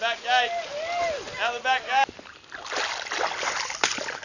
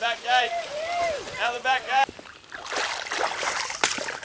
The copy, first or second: second